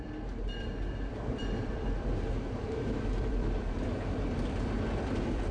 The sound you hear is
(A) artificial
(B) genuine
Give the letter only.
A